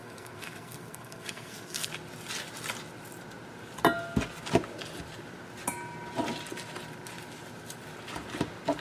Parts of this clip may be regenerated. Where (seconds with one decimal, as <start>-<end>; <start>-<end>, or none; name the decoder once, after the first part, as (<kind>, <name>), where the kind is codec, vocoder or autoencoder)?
0.0-1.9 (codec, SNAC)